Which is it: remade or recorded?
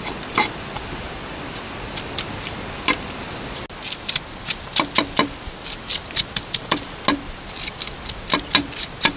recorded